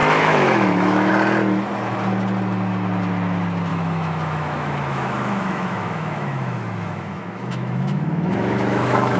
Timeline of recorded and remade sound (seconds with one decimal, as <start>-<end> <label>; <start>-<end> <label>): 0.0-1.1 remade; 1.1-3.7 recorded; 3.7-9.2 remade